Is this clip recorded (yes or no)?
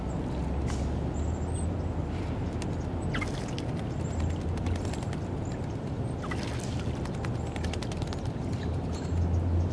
yes